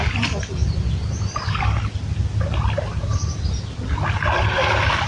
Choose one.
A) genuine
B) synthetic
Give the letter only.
A